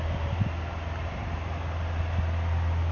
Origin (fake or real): real